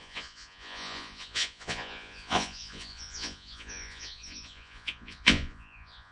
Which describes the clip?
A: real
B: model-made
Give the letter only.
B